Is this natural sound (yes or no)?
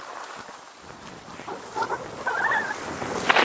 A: yes